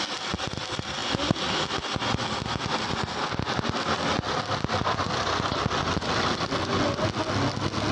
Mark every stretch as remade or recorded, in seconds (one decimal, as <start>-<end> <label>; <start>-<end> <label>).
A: 0.0-7.9 recorded